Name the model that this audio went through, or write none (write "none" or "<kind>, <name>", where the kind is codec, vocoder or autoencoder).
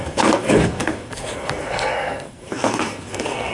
codec, SNAC